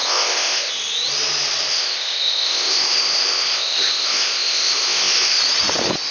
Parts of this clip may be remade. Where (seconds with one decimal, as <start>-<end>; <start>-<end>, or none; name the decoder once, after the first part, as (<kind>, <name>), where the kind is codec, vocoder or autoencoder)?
0.0-0.7 (codec, ZipCodec); 1.7-5.4